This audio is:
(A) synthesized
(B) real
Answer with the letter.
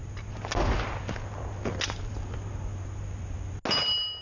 B